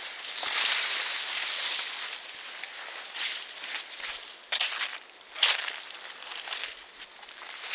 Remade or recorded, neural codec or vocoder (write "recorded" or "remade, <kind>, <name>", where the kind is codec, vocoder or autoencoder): recorded